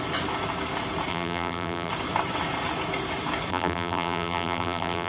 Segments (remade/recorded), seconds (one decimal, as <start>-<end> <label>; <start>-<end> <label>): 0.0-1.1 recorded; 1.1-1.9 remade; 1.9-3.5 recorded; 3.5-5.1 remade